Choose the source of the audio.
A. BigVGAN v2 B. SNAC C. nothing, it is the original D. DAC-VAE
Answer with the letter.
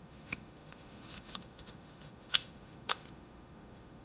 D